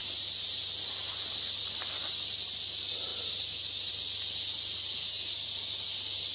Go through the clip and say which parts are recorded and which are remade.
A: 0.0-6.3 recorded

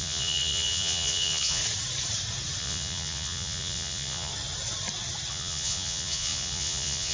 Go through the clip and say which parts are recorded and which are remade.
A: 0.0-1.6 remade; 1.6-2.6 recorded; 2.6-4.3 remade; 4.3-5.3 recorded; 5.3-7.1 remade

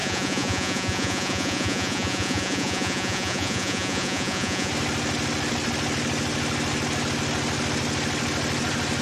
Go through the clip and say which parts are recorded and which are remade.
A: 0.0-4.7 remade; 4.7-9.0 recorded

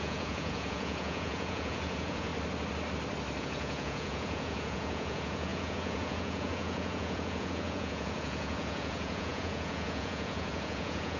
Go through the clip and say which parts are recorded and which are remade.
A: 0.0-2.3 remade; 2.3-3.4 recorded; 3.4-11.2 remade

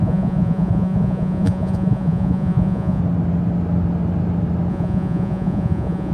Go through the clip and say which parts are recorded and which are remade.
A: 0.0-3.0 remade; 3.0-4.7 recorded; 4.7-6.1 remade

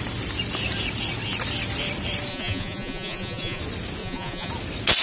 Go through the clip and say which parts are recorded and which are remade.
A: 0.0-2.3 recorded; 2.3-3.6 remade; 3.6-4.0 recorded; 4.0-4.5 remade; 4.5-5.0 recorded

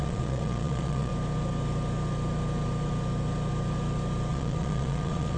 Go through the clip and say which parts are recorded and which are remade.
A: 0.0-1.1 remade; 1.1-4.3 recorded; 4.3-5.4 remade

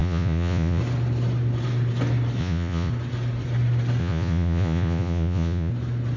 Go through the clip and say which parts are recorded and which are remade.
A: 0.0-0.8 remade; 0.8-2.4 recorded; 2.4-2.9 remade; 2.9-4.0 recorded; 4.0-5.7 remade; 5.7-6.2 recorded